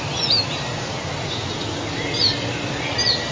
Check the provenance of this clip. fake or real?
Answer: real